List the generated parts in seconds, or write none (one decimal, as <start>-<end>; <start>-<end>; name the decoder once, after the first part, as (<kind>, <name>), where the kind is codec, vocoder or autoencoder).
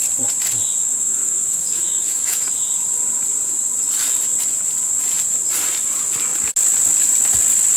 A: 0.8-2.5 (autoencoder, DAC-VAE)